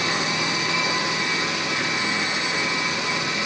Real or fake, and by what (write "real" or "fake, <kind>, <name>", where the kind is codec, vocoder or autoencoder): real